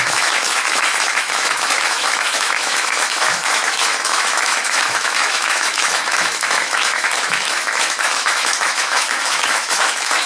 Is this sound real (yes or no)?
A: no